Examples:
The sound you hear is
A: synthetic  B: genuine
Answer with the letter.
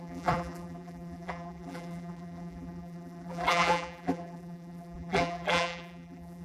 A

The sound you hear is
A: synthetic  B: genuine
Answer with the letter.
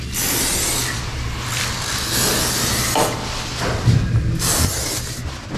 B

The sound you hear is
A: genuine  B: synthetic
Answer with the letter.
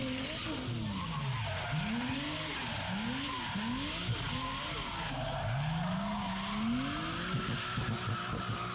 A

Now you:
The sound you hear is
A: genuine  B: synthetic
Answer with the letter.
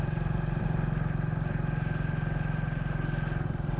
A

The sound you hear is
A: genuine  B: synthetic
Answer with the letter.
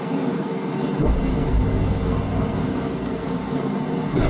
B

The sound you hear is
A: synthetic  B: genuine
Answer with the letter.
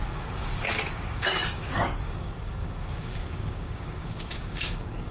A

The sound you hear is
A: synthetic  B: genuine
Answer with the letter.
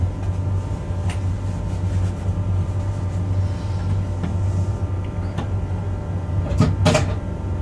B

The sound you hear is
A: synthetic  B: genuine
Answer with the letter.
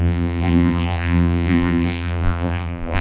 A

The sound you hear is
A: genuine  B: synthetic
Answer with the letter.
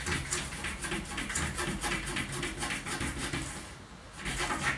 A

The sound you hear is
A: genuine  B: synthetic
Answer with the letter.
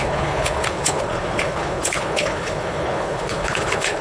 B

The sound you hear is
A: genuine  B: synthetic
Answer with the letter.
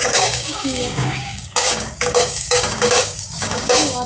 B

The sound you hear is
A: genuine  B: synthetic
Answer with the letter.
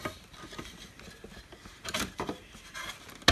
A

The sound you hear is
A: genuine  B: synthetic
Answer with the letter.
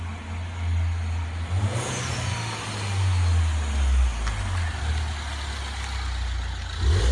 A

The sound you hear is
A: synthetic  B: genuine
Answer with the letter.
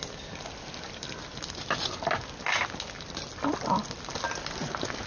B